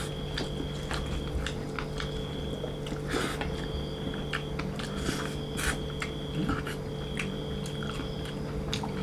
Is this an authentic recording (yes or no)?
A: yes